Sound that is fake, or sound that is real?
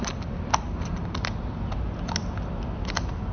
real